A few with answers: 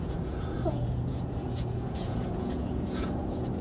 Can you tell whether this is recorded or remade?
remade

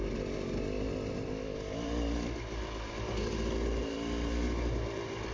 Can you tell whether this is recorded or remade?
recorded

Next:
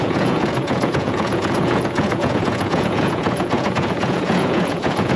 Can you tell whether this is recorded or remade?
remade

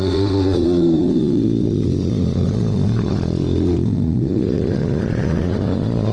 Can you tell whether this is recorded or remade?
remade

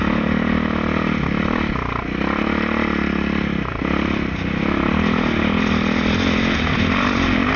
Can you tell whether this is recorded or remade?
recorded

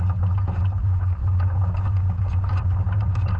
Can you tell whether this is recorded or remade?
recorded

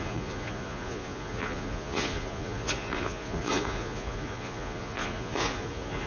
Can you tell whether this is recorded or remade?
remade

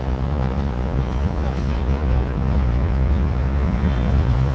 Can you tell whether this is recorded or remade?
remade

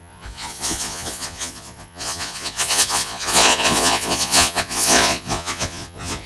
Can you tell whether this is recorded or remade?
remade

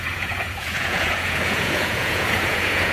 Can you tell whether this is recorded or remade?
remade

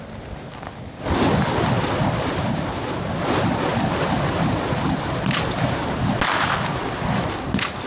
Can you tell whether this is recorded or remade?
recorded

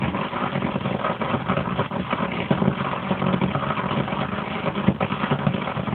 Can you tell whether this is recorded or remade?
recorded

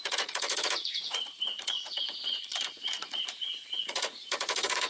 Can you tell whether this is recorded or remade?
remade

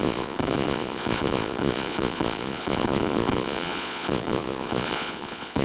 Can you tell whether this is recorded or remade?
remade